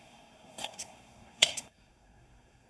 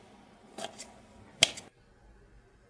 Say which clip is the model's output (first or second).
first